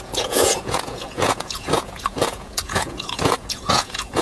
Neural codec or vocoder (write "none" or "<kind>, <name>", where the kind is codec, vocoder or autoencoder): vocoder, Vocos